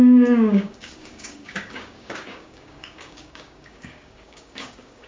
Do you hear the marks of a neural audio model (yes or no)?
yes